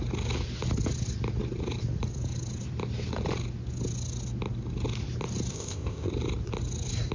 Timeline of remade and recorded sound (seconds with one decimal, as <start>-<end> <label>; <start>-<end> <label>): 0.0-5.5 recorded; 5.5-6.1 remade; 6.1-7.1 recorded